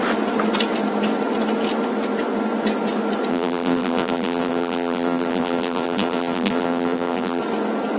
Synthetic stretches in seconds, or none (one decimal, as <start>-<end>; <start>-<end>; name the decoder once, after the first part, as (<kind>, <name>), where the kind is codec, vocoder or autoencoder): 3.3-7.4 (vocoder, BigVGAN v2)